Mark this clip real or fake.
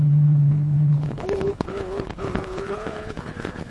fake